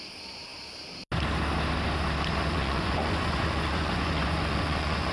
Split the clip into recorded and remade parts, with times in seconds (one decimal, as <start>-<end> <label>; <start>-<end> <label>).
0.0-2.4 recorded; 2.4-5.1 remade